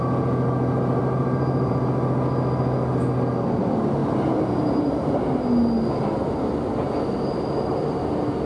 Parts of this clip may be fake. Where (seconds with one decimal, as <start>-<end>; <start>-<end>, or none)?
1.0-1.8; 4.0-5.4